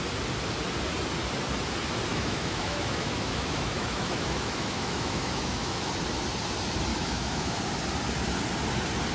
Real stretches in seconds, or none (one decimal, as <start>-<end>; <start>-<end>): 0.0-2.1; 5.9-6.9; 7.6-9.1